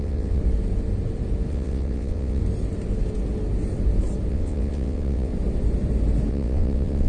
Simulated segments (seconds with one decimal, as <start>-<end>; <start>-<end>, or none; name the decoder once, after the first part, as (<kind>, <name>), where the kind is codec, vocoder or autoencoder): 0.0-0.4 (vocoder, WaveNeXt); 1.5-2.4; 4.3-5.3; 6.3-7.1

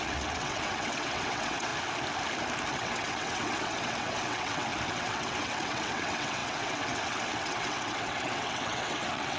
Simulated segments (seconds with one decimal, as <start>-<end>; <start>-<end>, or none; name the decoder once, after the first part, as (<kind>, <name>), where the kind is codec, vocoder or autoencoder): 0.0-1.7 (vocoder, WaveNeXt); 2.7-9.4

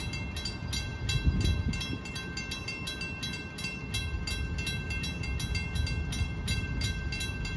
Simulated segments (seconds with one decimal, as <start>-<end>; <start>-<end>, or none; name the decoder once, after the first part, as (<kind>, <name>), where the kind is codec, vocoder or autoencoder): none

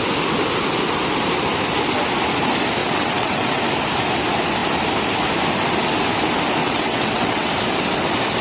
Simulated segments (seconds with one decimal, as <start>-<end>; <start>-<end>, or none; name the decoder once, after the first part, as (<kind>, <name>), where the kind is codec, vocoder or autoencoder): 2.8-3.6 (vocoder, WaveNeXt); 6.6-7.5

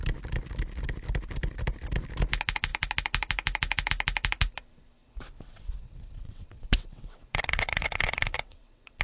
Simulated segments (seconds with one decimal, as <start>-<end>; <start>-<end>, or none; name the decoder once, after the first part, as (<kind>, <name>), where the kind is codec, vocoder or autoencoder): 5.0-9.0 (vocoder, WaveNeXt)

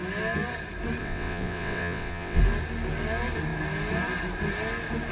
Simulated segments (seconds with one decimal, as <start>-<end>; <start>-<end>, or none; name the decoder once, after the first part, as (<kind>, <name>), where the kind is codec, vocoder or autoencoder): 1.0-2.4 (vocoder, WaveNeXt)

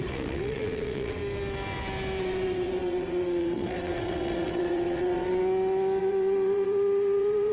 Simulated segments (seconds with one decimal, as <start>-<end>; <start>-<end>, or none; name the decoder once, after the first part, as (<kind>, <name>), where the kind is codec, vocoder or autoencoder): 0.0-1.2 (vocoder, WaveNeXt); 2.2-5.4; 6.0-7.5